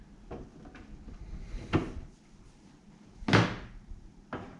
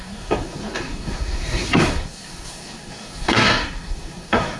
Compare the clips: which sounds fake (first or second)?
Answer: second